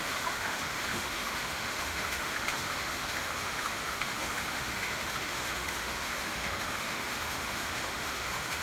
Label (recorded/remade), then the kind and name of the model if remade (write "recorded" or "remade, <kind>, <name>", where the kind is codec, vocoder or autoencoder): remade, autoencoder, DAC-VAE